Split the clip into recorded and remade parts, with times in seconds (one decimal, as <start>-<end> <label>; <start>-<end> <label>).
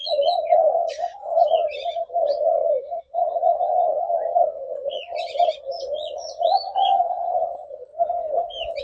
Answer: 0.0-7.9 remade; 7.9-8.8 recorded